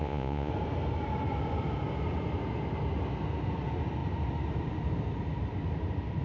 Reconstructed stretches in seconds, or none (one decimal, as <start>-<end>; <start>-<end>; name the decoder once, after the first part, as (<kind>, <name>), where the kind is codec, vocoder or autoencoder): 0.0-0.5 (vocoder, Vocos)